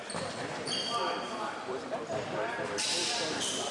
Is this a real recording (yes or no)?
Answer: no